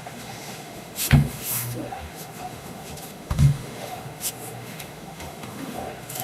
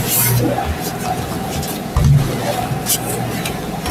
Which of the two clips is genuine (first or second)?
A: second